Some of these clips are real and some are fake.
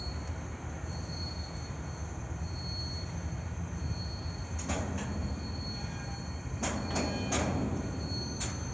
real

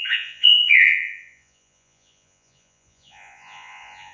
fake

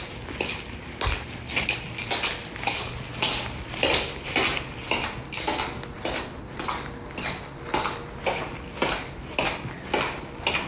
real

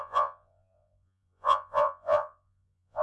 fake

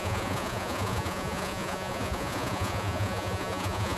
fake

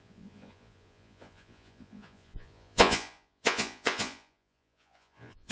fake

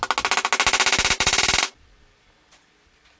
real